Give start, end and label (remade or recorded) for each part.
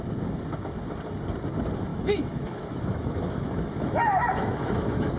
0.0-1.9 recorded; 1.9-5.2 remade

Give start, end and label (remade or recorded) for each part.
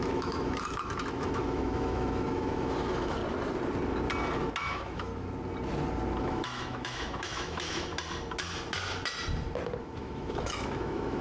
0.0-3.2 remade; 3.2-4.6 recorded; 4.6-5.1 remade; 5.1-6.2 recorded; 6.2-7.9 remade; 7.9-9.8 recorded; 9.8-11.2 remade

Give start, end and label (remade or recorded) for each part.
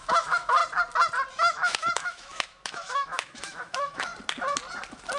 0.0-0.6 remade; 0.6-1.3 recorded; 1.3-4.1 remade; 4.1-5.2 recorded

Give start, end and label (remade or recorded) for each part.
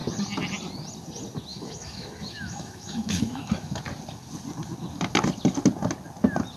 0.0-1.5 recorded; 1.5-3.8 remade; 3.8-6.6 recorded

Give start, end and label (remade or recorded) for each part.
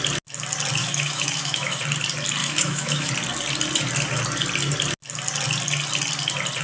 0.0-0.8 recorded; 0.8-1.8 remade; 1.8-2.4 recorded; 2.4-3.1 remade; 3.1-6.6 recorded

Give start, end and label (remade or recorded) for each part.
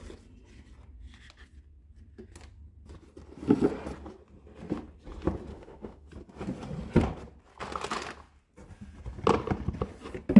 0.0-5.5 recorded; 5.5-6.1 remade; 6.1-10.4 recorded